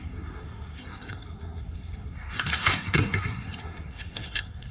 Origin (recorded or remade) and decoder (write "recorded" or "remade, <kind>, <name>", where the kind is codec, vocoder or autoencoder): remade, codec, SNAC